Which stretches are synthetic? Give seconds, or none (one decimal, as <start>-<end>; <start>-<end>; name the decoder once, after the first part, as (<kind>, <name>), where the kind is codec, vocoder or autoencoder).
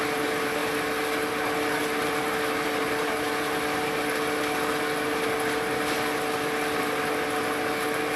none